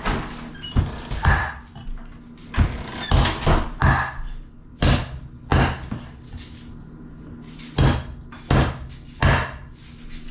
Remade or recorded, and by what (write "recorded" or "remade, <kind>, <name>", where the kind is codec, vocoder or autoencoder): recorded